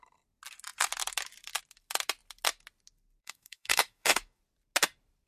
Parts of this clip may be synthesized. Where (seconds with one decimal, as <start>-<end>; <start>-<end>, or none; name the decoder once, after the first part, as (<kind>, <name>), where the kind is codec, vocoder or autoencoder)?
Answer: 3.2-4.4 (codec, DAC)